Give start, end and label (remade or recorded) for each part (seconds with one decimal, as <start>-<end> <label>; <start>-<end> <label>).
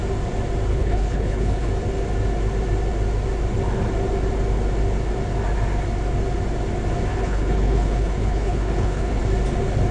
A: 0.0-0.7 recorded; 0.7-1.7 remade; 1.7-7.1 recorded; 7.1-9.2 remade; 9.2-9.9 recorded